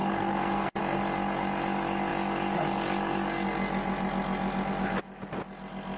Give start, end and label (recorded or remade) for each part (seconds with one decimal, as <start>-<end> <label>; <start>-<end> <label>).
0.0-0.8 remade; 0.8-6.0 recorded